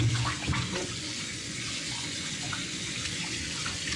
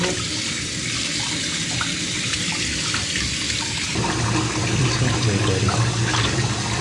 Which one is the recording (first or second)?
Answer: second